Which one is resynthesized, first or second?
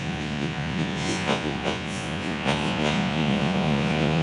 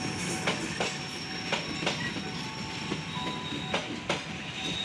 first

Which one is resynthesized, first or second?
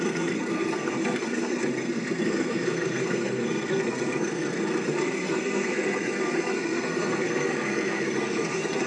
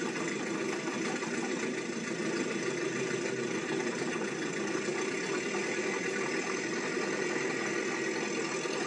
first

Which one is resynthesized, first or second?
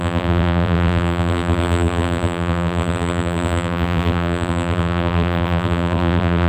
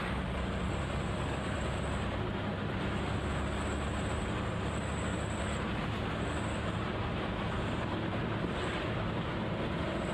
first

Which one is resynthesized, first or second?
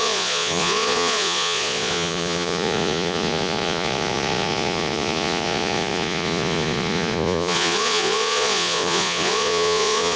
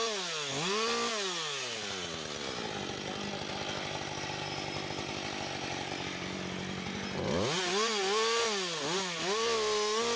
first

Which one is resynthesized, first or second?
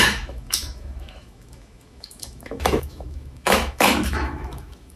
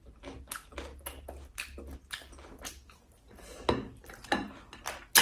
first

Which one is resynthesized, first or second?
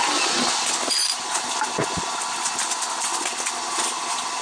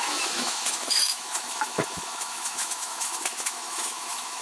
second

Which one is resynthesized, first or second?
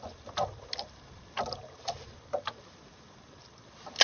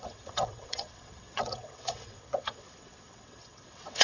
second